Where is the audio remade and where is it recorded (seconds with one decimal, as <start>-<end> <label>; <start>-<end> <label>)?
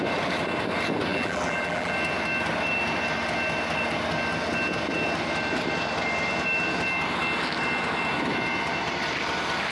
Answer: 0.0-1.1 recorded; 1.1-1.9 remade; 1.9-9.7 recorded